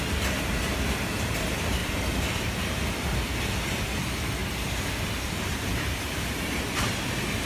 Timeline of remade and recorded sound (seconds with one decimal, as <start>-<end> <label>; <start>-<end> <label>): 0.0-1.8 recorded; 1.8-2.6 remade; 2.6-4.4 recorded; 4.4-6.9 remade; 6.9-7.5 recorded